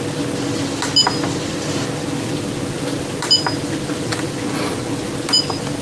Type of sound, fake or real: real